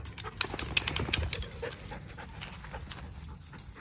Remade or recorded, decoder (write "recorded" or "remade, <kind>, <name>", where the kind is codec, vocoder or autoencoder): recorded